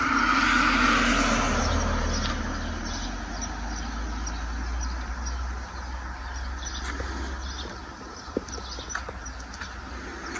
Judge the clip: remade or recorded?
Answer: recorded